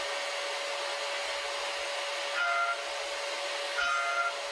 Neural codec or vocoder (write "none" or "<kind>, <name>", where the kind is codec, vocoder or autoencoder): none